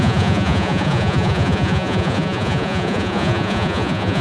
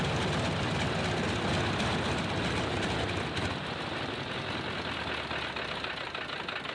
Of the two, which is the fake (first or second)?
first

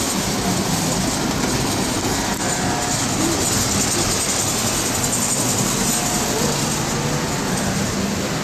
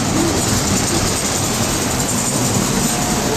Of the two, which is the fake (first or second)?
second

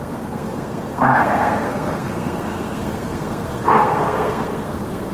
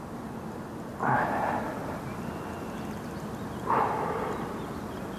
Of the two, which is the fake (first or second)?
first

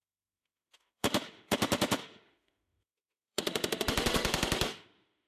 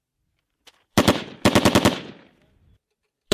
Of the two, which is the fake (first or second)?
first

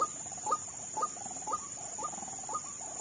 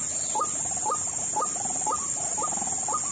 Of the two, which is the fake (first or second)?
first